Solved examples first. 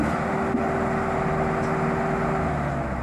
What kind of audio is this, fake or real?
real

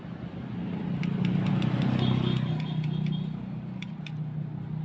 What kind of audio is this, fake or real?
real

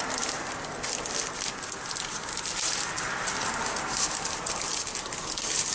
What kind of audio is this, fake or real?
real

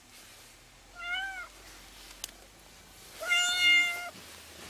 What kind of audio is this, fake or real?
real